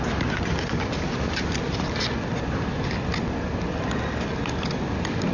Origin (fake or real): real